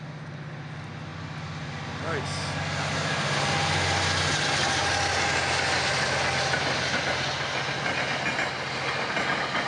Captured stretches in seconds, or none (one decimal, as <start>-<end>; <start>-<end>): 0.0-9.7